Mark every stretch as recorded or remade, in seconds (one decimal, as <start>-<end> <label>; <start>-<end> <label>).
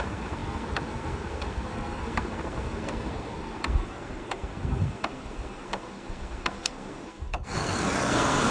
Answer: 0.0-8.5 remade